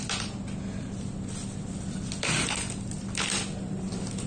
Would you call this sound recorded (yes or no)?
yes